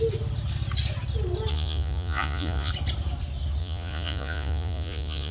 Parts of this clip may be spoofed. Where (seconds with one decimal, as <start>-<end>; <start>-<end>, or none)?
1.5-2.7; 3.6-5.3